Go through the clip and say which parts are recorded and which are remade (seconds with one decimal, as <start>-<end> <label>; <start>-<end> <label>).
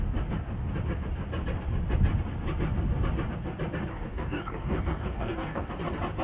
0.0-3.9 recorded; 3.9-5.7 remade; 5.7-6.2 recorded